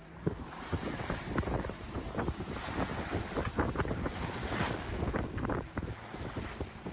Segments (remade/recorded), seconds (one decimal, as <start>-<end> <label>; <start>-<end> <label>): 0.0-6.9 remade